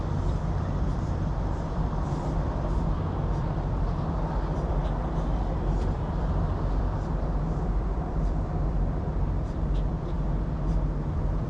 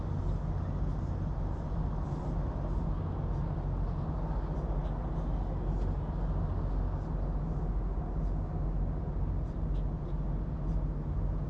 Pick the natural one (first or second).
second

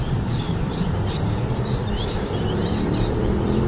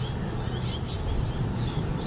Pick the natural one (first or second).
second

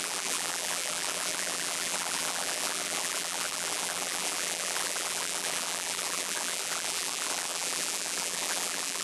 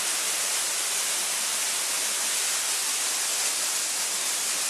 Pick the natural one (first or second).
second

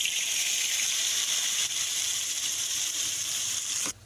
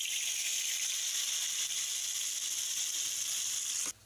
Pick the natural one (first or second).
second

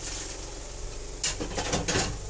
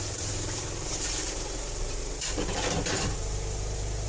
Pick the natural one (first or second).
first